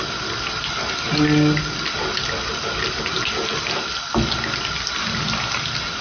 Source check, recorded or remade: recorded